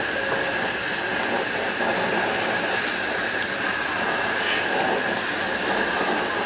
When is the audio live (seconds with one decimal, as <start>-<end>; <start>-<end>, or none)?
0.0-6.5